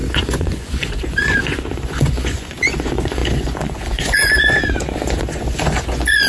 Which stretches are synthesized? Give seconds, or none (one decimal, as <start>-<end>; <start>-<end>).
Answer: 0.0-6.3